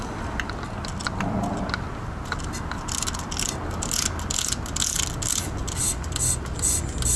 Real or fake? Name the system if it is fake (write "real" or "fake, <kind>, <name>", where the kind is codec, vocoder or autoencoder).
real